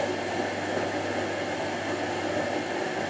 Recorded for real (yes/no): yes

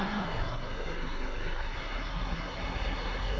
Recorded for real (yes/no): no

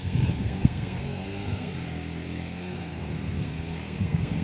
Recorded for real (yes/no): no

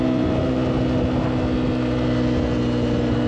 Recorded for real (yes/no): yes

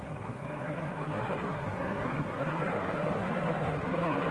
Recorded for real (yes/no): no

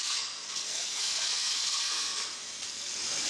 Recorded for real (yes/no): no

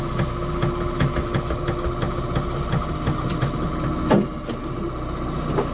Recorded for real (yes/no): yes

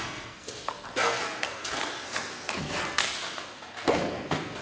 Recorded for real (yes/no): no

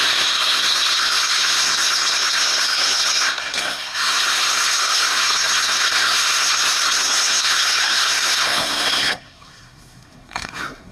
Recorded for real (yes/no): no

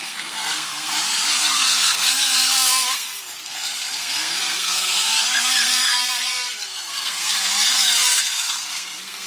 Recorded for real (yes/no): no